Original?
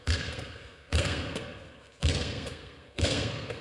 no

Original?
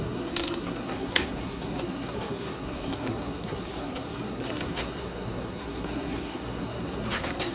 no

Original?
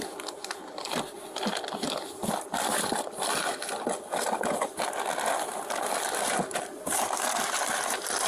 yes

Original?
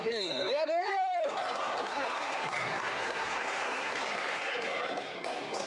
no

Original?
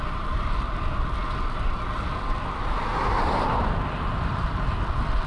yes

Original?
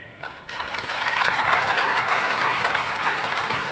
no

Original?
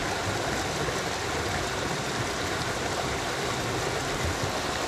yes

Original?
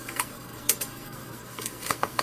no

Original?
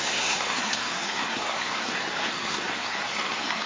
no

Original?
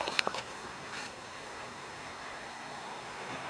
no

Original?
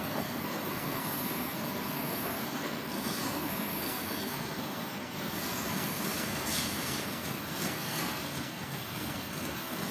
no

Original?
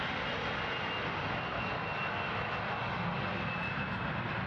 yes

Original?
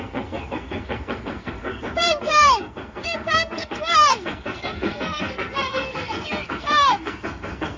no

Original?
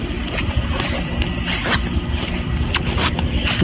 yes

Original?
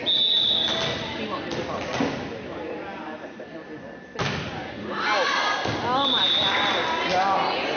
yes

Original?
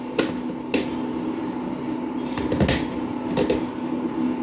yes